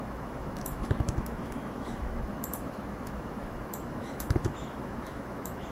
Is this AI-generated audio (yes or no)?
yes